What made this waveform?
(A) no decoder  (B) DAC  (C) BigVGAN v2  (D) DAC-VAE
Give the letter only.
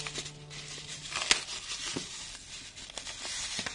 A